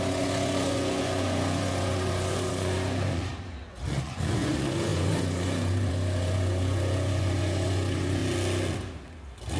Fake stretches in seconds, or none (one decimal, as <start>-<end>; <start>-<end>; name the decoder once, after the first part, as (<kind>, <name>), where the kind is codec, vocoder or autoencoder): 0.0-3.3 (vocoder, Vocos); 3.9-8.2